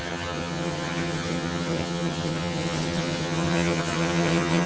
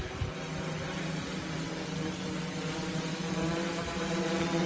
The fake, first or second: first